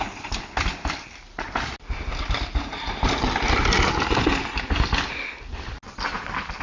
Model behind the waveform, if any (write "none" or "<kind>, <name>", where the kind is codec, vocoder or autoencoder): none